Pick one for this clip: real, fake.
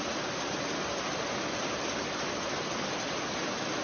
real